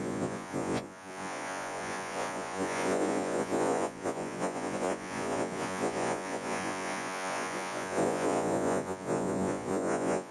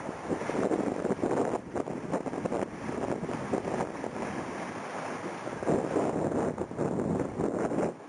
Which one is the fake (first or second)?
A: first